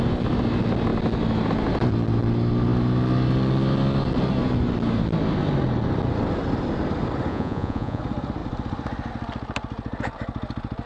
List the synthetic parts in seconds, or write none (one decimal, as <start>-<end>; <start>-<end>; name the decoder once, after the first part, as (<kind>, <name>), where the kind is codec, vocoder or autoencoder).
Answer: 7.3-8.0 (vocoder, Vocos)